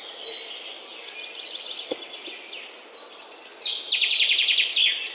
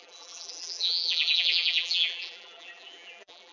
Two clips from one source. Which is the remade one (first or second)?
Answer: second